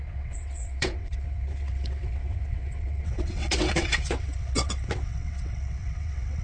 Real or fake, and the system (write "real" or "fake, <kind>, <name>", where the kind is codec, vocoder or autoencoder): fake, vocoder, WaveNeXt